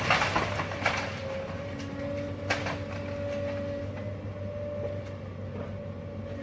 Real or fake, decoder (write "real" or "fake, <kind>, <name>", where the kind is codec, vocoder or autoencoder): real